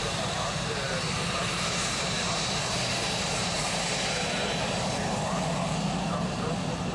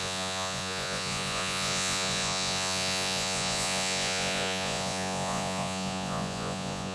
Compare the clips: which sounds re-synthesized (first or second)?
second